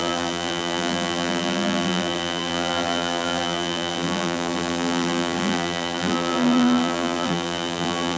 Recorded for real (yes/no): no